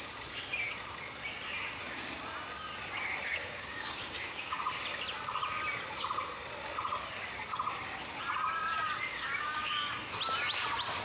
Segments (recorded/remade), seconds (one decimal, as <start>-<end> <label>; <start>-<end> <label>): 0.0-3.4 recorded; 3.4-4.6 remade; 4.6-9.1 recorded; 9.1-9.9 remade; 9.9-11.0 recorded